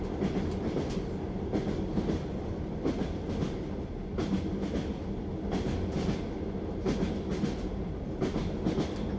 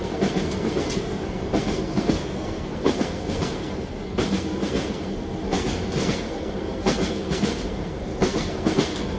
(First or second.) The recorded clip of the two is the first